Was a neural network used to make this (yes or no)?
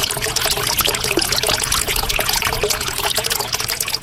yes